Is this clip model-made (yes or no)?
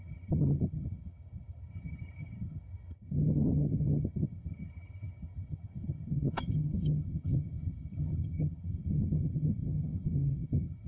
yes